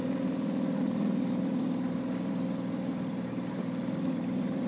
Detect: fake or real fake